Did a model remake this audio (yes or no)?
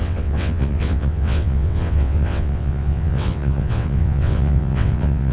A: yes